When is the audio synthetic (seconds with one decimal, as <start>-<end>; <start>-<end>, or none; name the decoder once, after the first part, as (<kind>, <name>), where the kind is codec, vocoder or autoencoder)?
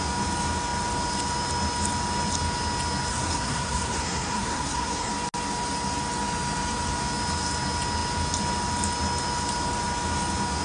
3.1-5.1 (codec, SNAC)